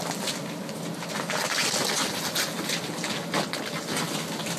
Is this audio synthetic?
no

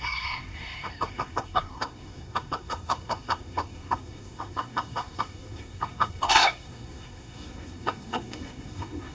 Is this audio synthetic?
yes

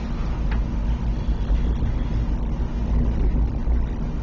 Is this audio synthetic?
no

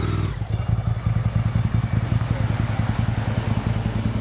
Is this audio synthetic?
no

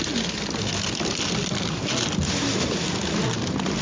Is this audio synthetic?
no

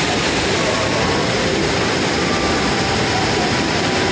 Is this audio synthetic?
no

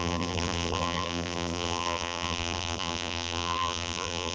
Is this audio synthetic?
yes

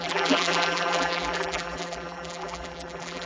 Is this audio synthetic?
yes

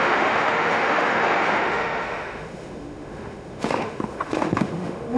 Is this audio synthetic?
yes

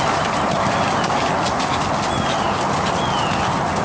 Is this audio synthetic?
no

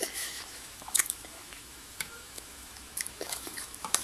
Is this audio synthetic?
yes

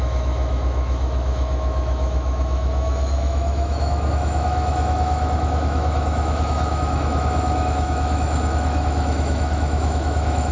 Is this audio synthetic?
yes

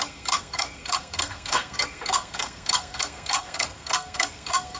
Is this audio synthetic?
yes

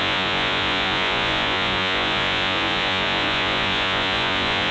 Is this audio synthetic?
yes